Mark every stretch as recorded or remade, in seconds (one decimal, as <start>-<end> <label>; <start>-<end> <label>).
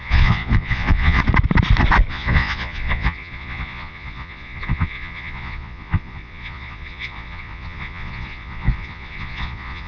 0.0-1.2 remade; 1.2-2.1 recorded; 2.1-9.9 remade